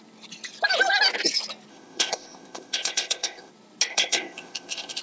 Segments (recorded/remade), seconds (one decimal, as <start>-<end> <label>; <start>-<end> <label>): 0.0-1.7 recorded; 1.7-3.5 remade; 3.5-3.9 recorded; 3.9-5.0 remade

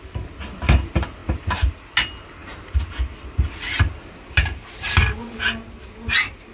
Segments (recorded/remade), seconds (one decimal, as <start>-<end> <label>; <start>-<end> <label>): 0.0-6.5 recorded

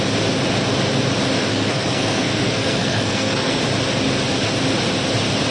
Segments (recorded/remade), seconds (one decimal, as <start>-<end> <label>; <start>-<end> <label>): 0.0-1.5 recorded; 1.5-3.6 remade; 3.6-5.5 recorded

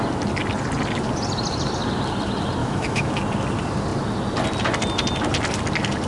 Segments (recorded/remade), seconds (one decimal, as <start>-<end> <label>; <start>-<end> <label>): 0.0-2.6 recorded; 2.6-3.1 remade; 3.1-6.1 recorded

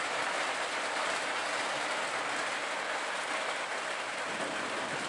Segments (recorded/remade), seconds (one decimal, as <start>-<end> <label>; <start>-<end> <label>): 0.0-5.1 recorded

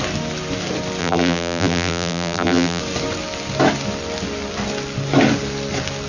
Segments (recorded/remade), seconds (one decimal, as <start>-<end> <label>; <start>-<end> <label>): 0.0-1.0 recorded; 1.0-2.8 remade; 2.8-6.1 recorded